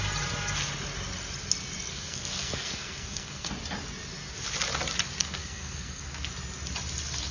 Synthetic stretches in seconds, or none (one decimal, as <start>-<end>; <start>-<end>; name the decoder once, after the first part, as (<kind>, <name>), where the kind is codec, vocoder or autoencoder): 1.9-3.5 (codec, SNAC); 5.2-6.3

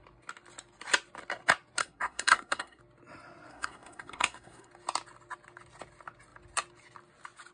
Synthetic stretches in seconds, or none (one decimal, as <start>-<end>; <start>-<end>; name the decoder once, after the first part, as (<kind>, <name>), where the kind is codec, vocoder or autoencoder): 1.8-2.8 (codec, SNAC); 3.5-4.7

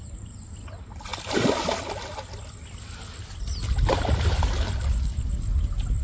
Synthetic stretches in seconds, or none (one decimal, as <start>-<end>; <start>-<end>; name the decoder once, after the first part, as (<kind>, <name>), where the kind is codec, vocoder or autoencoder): none

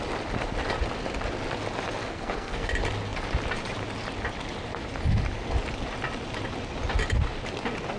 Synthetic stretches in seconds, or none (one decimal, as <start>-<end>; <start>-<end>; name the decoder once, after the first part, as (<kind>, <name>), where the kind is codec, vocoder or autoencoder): 2.0-2.7 (codec, SNAC)

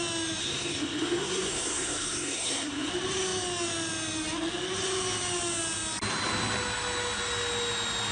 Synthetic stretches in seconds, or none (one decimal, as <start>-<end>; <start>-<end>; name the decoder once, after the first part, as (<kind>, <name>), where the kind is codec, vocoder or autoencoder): 0.4-2.9 (codec, SNAC)